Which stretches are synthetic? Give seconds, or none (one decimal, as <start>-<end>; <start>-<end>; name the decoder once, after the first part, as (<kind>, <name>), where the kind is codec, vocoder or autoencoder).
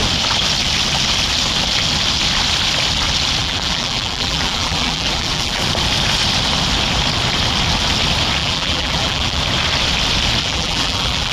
3.4-5.6 (vocoder, BigVGAN v2); 8.4-9.4; 10.4-11.3